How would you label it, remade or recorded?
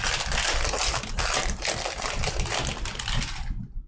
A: recorded